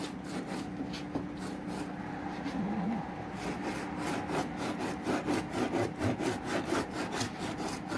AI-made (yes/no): no